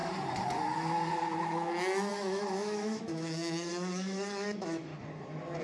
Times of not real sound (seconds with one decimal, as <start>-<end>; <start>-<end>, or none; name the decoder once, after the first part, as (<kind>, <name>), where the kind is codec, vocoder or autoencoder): 1.4-4.9 (autoencoder, DAC-VAE)